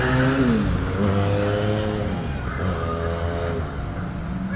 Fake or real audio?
real